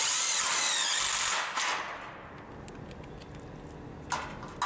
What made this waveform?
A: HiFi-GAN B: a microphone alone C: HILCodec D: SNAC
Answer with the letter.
B